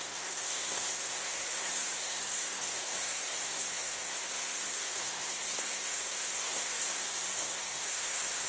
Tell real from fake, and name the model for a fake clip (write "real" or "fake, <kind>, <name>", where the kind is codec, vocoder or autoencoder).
fake, codec, SNAC